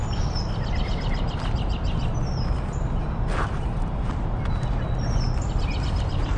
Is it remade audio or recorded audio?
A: recorded